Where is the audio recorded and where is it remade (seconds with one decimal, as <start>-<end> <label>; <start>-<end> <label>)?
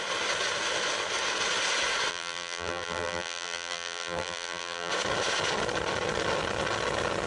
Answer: 0.0-2.1 recorded; 2.1-4.9 remade; 4.9-7.3 recorded